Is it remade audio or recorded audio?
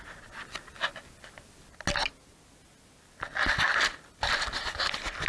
recorded